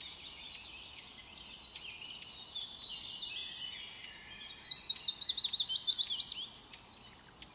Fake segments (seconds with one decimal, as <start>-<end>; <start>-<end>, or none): none